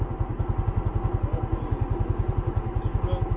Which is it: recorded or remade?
recorded